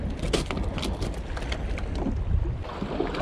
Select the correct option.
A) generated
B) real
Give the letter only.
B